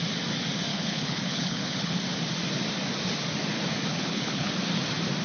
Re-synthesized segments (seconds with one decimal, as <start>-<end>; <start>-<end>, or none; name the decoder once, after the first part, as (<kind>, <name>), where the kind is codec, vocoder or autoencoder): 0.7-2.0 (codec, HILCodec); 3.9-4.5

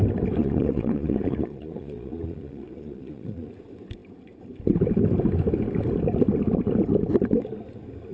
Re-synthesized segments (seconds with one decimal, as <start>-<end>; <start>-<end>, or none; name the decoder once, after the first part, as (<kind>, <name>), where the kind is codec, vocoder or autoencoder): 0.4-3.5 (vocoder, Vocos)

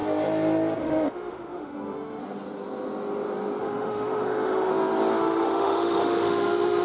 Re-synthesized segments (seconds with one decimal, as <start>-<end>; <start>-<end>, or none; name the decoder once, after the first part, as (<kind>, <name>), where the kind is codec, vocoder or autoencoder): 0.8-2.2 (autoencoder, DAC-VAE); 3.6-4.7; 5.2-6.8

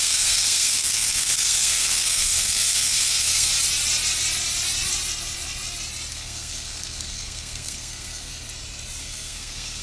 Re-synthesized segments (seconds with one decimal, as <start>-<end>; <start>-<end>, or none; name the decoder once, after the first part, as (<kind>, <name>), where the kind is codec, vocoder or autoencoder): 0.0-3.5 (codec, SNAC); 6.1-8.3; 9.0-9.8

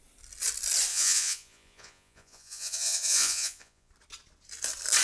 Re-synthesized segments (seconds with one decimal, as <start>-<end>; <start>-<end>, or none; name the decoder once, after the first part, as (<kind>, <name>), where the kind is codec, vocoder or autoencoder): 0.9-3.9 (vocoder, Vocos)